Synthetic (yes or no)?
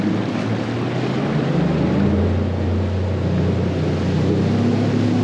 no